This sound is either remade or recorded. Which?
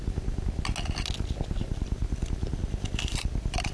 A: recorded